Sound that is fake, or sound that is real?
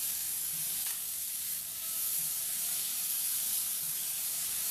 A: fake